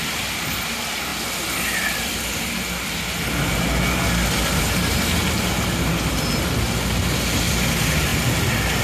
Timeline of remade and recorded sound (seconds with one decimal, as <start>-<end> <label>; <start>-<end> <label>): 0.0-8.8 recorded